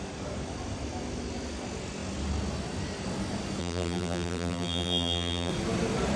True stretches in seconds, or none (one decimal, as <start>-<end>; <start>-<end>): 0.0-3.6; 5.5-6.2